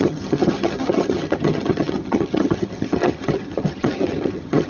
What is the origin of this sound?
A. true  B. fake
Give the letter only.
B